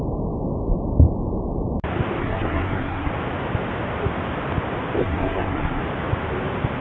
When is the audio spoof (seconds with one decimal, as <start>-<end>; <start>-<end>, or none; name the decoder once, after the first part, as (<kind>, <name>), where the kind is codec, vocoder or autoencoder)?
2.2-3.1 (codec, SNAC); 5.0-5.8